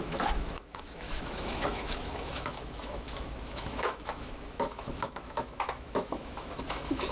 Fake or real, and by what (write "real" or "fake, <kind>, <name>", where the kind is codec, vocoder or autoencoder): fake, autoencoder, DAC-VAE